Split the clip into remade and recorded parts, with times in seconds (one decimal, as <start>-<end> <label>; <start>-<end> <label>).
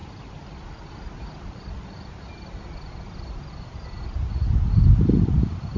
0.0-5.8 recorded